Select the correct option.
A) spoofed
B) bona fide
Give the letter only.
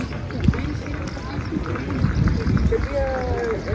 B